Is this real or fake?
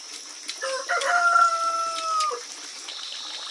real